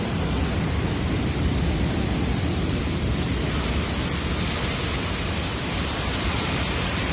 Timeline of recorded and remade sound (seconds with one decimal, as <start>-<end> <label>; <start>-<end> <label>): 0.0-0.4 remade; 0.4-1.1 recorded; 1.1-1.5 remade; 1.5-5.8 recorded; 5.8-7.1 remade